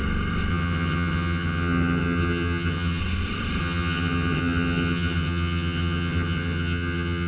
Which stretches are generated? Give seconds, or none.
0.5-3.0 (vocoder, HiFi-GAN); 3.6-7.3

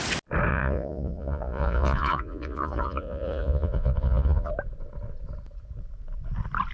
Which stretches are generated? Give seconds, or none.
0.5-4.5 (vocoder, Vocos)